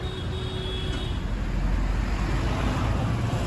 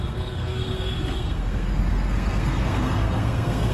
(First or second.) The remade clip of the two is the second